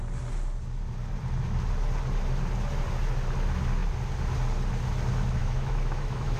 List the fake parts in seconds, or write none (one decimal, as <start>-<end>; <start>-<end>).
5.4-6.4